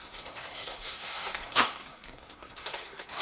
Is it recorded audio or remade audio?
remade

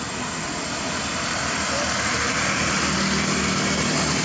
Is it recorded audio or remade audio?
recorded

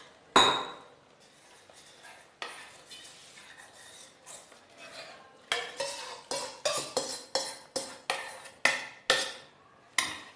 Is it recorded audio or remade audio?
recorded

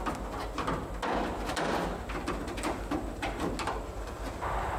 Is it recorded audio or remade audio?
recorded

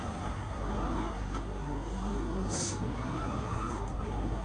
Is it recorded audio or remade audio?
remade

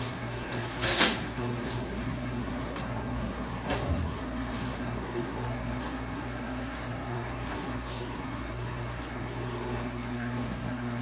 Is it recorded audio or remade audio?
remade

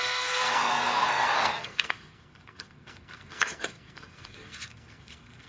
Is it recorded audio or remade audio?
remade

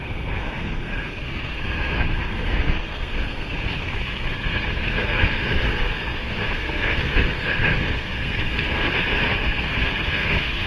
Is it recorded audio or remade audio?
remade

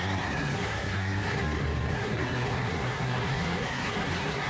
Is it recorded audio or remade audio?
remade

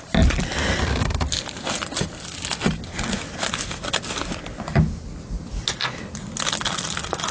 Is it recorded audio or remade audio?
recorded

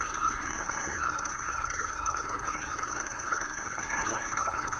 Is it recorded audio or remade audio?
remade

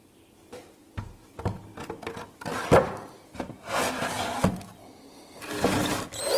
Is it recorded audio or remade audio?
recorded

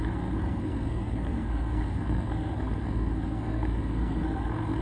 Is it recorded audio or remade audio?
remade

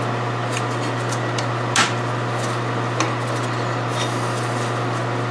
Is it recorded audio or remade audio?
recorded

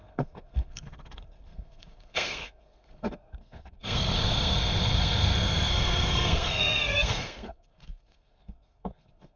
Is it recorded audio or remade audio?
remade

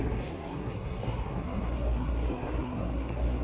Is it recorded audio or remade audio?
remade